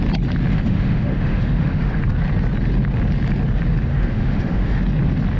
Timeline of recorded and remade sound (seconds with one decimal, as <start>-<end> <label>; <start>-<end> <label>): 0.0-0.5 recorded; 0.5-2.0 remade; 2.0-3.9 recorded; 3.9-4.8 remade; 4.8-5.4 recorded